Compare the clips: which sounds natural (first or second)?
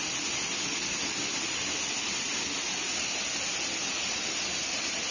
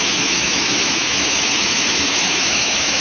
first